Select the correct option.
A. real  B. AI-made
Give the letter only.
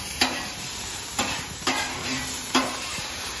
B